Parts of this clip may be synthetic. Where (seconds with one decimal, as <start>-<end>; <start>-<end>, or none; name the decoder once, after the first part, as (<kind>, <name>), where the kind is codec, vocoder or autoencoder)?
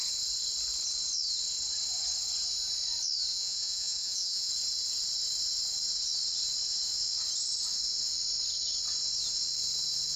3.3-4.5 (vocoder, Vocos)